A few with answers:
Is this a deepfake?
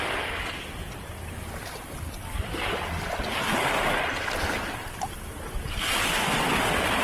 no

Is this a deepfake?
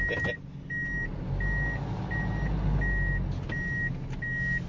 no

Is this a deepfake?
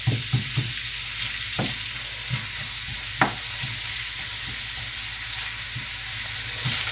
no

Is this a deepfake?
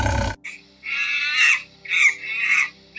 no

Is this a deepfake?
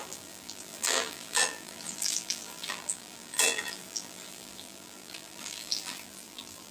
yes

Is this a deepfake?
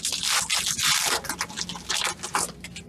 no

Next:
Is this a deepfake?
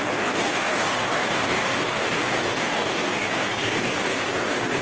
yes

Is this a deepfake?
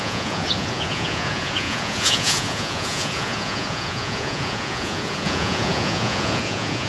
yes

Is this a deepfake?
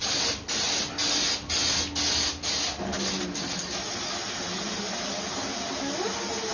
no